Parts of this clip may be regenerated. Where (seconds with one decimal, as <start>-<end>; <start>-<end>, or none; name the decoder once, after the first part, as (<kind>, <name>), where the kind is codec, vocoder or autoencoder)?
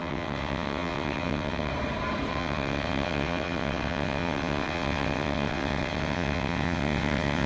0.0-1.7 (vocoder, WaveNeXt); 2.3-7.5